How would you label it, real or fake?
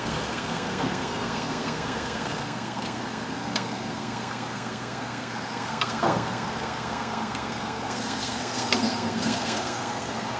fake